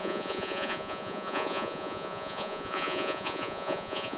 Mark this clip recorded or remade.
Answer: remade